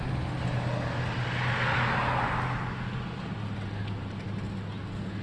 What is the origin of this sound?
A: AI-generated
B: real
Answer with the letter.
B